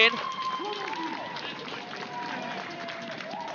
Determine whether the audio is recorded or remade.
recorded